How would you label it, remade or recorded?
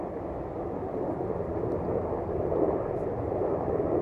recorded